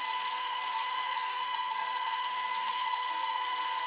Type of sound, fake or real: fake